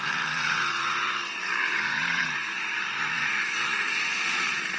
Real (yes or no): no